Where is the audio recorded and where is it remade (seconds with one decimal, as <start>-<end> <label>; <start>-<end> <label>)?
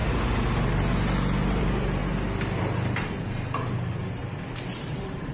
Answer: 0.0-1.4 recorded; 1.4-2.0 remade; 2.0-2.6 recorded; 2.6-4.2 remade; 4.2-4.8 recorded; 4.8-5.3 remade